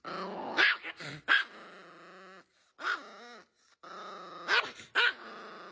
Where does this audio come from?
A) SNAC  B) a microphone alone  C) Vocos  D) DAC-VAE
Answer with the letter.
B